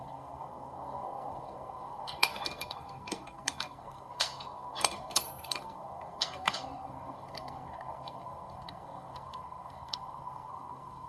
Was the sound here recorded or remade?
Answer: remade